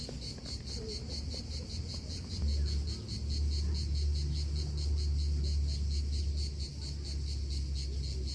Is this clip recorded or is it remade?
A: recorded